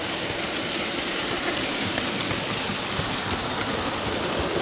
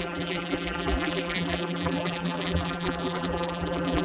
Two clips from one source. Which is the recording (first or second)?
first